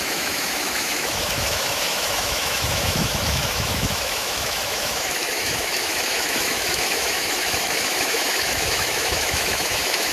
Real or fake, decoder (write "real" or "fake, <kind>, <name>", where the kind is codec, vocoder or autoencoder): fake, autoencoder, DAC-VAE